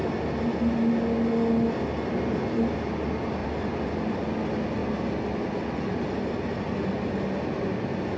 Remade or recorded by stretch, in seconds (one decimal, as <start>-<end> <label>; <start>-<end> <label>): 0.0-3.4 recorded; 3.4-4.0 remade; 4.0-8.2 recorded